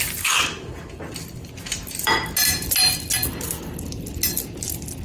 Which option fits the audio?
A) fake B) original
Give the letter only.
B